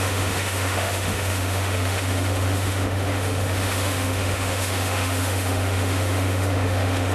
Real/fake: fake